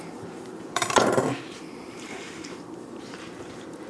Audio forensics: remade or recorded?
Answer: remade